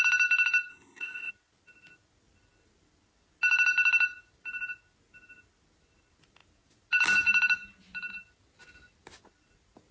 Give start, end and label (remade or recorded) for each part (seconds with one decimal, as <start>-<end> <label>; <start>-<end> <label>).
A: 0.0-0.7 recorded; 0.7-1.3 remade; 1.3-9.9 recorded